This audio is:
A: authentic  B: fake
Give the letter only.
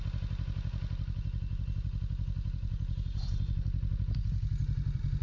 A